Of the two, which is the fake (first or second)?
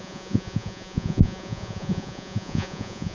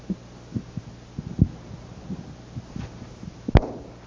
first